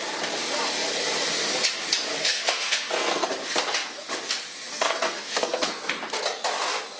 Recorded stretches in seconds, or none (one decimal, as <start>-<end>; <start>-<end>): 0.0-2.1; 3.3-4.7; 5.9-7.0

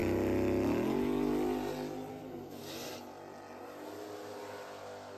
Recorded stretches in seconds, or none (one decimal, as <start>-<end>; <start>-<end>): 0.0-2.1; 2.6-5.2

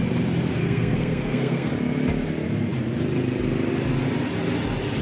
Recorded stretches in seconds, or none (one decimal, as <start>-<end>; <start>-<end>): 0.0-0.5; 1.7-5.0

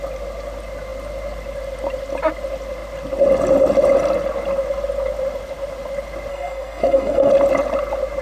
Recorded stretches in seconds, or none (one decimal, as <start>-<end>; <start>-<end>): 0.0-6.3; 7.3-8.2

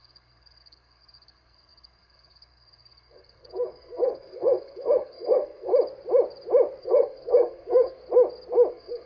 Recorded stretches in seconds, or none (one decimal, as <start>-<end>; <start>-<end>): 5.7-6.8; 8.0-8.7